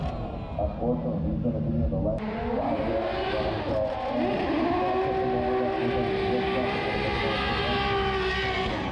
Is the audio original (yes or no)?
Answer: yes